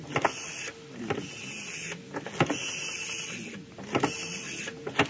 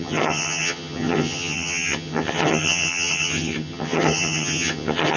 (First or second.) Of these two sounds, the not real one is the second